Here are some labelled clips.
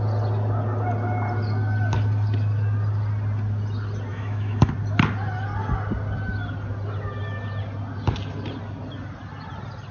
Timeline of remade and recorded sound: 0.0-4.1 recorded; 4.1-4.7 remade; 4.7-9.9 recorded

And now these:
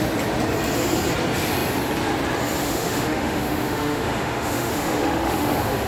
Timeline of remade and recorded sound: 0.0-2.6 recorded; 2.6-5.9 remade

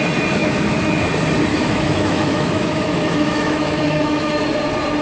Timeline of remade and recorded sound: 0.0-0.4 recorded; 0.4-0.9 remade; 0.9-1.5 recorded; 1.5-4.5 remade; 4.5-5.0 recorded